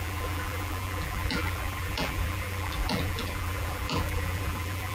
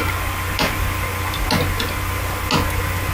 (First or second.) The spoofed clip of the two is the first